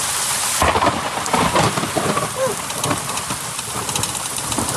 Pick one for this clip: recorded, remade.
remade